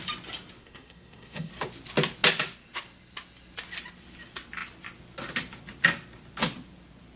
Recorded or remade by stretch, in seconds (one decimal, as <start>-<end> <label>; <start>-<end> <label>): 0.0-0.6 recorded; 0.6-1.5 remade; 1.5-7.2 recorded